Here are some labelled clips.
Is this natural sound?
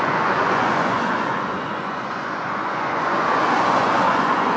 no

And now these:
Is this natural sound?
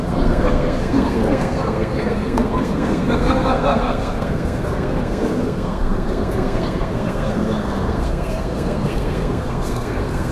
no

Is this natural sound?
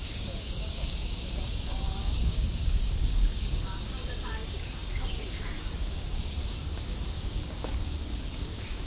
no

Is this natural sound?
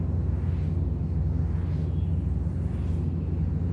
yes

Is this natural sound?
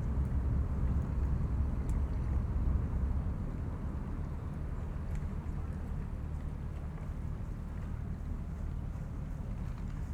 yes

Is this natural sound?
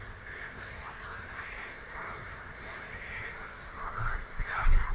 no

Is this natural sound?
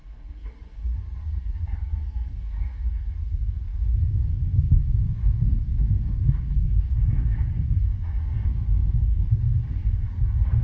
no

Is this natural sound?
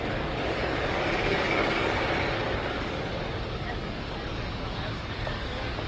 no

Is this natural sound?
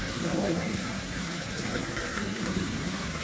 no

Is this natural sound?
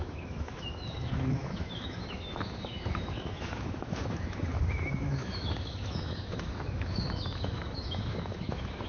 no